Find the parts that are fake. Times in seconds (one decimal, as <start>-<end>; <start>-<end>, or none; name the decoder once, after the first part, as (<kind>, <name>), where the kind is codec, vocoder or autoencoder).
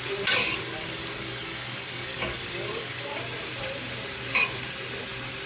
0.4-3.2 (codec, DAC)